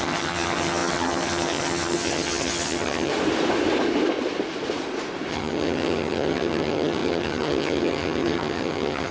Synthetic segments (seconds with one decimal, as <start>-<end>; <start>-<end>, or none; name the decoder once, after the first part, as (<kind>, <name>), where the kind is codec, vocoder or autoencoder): 0.0-3.1 (vocoder, HiFi-GAN); 5.3-9.1